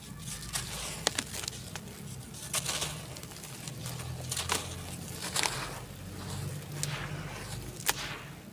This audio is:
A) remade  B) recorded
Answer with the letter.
B